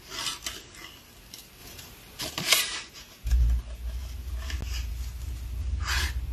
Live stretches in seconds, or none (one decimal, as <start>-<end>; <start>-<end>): 0.0-1.6; 2.2-6.3